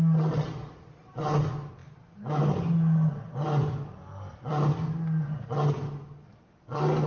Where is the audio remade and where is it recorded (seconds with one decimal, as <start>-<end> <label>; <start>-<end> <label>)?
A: 0.0-7.1 recorded